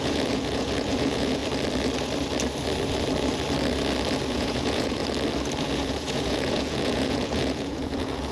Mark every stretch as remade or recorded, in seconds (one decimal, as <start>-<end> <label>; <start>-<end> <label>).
0.0-1.4 remade; 1.4-4.3 recorded; 4.3-5.0 remade; 5.0-5.6 recorded; 5.6-8.3 remade